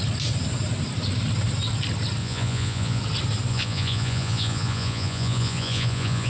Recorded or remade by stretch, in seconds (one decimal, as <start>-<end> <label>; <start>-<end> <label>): 0.0-2.2 recorded; 2.2-3.0 remade; 3.0-3.5 recorded; 3.5-6.3 remade